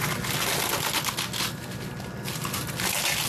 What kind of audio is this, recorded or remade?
recorded